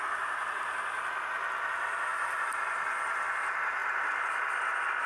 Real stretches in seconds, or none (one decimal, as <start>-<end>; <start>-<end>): 0.0-5.1